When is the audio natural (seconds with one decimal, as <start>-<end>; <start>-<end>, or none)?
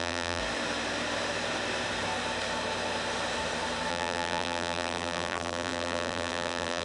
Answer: 0.4-3.9